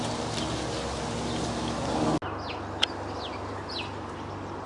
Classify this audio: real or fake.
real